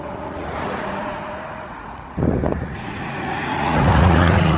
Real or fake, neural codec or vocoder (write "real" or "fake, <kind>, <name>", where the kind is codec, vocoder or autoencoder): fake, vocoder, Vocos